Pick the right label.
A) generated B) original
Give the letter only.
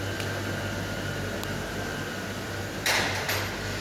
B